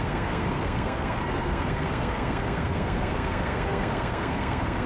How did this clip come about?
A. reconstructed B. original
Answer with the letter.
A